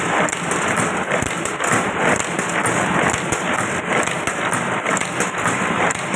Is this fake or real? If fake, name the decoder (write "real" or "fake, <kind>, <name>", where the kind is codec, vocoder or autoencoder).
real